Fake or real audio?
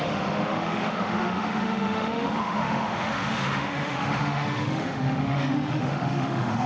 fake